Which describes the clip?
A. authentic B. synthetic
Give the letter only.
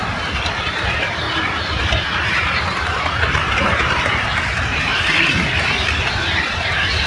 B